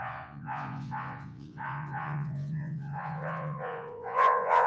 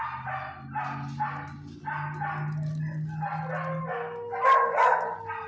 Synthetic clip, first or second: first